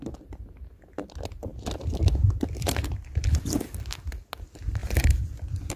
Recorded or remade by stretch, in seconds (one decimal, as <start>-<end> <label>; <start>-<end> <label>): 0.0-1.5 recorded; 1.5-3.4 remade; 3.4-4.8 recorded; 4.8-5.8 remade